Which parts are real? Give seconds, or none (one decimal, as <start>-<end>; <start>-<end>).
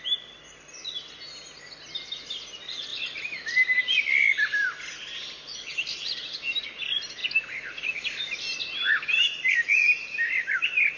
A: 0.0-11.0